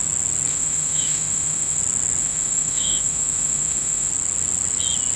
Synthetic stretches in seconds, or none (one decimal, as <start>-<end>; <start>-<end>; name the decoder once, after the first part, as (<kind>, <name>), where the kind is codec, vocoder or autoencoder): 0.5-1.8 (autoencoder, DAC-VAE); 2.2-4.1